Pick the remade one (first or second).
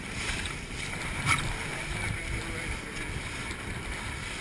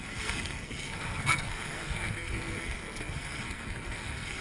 second